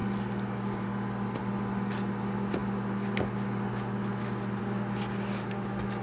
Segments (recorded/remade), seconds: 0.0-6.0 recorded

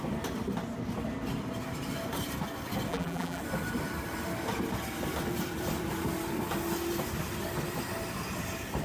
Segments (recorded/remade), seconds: 0.0-2.9 recorded; 2.9-3.4 remade; 3.4-8.8 recorded

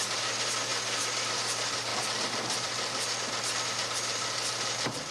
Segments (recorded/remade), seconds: 0.0-0.7 remade; 0.7-1.3 recorded; 1.3-1.9 remade; 1.9-3.2 recorded; 3.2-5.1 remade